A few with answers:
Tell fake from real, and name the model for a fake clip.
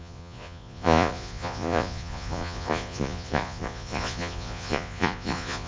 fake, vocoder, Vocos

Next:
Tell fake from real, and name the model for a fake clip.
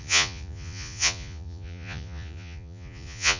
fake, vocoder, Vocos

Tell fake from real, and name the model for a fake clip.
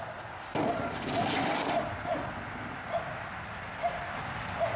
real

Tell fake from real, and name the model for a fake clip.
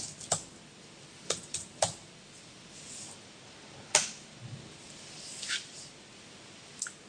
real